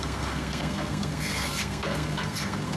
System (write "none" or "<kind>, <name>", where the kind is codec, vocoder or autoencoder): codec, SNAC